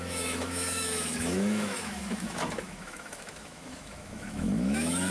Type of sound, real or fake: fake